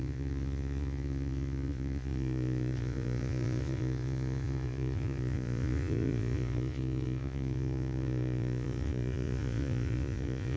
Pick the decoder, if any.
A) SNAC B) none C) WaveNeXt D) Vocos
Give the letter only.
D